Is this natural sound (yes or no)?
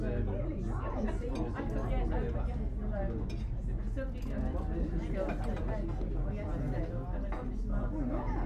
yes